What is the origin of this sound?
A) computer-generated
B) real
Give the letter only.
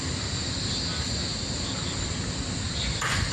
B